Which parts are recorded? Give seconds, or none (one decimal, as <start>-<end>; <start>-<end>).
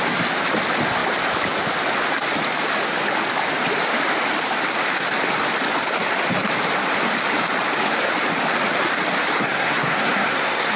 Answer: 0.0-9.4